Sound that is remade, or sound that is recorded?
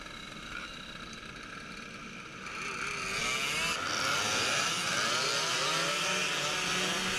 recorded